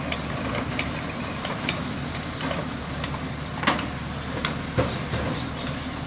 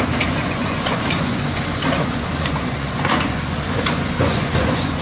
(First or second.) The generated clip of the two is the second